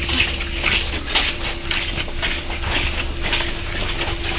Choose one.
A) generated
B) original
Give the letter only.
B